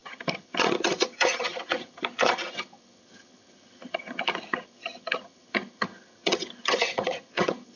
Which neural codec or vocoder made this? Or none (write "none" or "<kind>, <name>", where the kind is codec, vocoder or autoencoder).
vocoder, HiFi-GAN